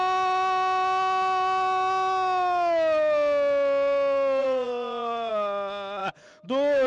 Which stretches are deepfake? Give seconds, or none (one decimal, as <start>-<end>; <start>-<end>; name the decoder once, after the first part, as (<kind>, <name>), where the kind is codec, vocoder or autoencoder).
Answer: 4.4-5.3 (vocoder, Vocos); 6.0-6.9